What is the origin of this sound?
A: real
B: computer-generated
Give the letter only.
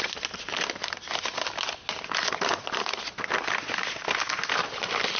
A